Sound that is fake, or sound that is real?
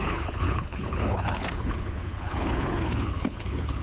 fake